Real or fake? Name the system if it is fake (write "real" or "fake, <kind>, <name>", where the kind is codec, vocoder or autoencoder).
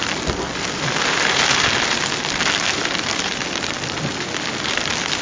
fake, vocoder, BigVGAN v2